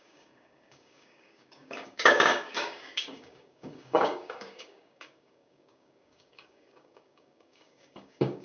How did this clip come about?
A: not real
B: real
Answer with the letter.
A